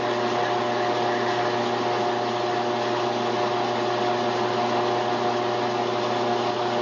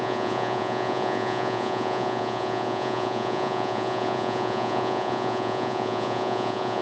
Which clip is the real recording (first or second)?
first